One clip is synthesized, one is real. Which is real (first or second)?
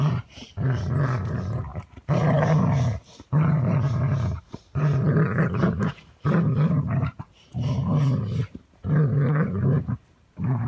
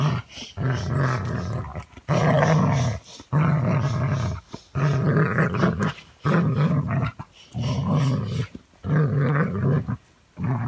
second